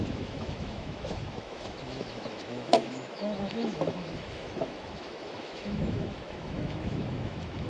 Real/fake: fake